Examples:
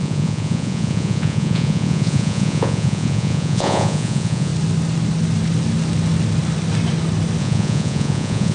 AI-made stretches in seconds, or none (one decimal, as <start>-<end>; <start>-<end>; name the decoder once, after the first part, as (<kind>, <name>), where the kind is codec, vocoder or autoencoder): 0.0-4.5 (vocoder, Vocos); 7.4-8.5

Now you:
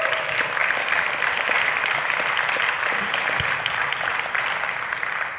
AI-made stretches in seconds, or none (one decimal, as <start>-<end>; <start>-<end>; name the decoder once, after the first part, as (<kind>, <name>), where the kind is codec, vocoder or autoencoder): none

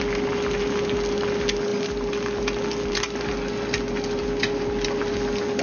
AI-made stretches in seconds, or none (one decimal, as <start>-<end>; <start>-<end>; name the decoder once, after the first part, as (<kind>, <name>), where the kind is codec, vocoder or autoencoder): none